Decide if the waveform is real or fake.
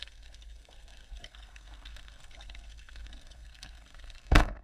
fake